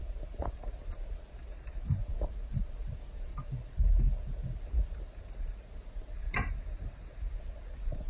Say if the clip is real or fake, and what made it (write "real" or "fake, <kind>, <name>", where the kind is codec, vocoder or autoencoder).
real